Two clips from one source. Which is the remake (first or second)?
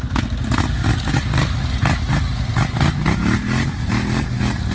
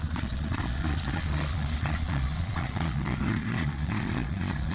second